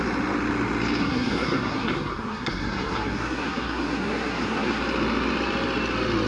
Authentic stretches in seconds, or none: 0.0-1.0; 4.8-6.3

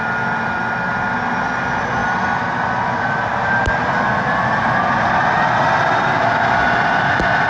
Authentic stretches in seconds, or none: 0.0-7.5